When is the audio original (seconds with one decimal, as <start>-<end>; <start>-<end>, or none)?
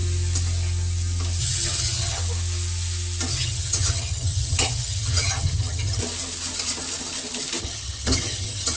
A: 0.0-1.4; 2.2-3.3; 6.0-7.6